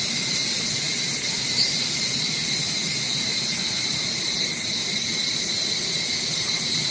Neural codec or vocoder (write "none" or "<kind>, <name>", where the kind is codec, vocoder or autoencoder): none